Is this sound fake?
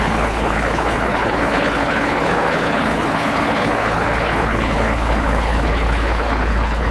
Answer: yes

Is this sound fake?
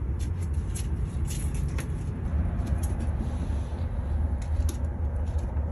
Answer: no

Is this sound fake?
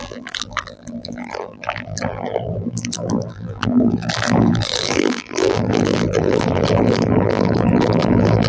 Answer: yes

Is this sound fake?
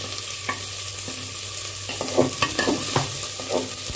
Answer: no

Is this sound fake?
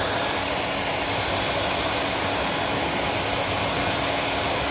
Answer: no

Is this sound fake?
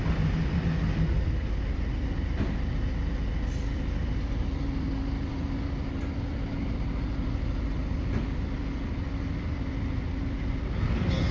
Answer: no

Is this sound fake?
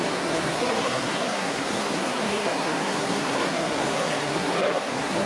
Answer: yes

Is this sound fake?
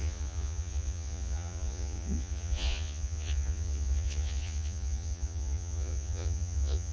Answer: yes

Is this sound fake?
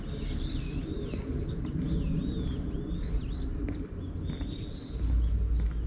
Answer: no